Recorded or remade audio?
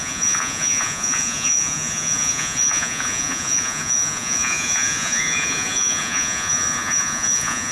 remade